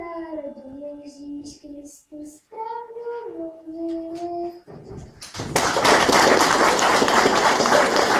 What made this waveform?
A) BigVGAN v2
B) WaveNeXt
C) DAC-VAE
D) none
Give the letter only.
D